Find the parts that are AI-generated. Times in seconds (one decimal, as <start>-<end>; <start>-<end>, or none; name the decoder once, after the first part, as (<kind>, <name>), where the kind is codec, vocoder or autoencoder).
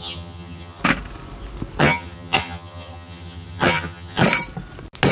0.0-0.8 (vocoder, HiFi-GAN); 1.8-4.2